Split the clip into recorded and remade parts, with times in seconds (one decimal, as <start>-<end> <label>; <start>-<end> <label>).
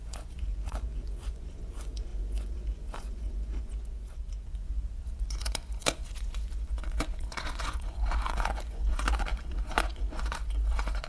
0.0-11.1 remade